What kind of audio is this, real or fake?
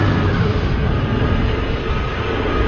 real